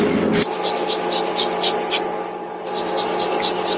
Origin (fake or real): real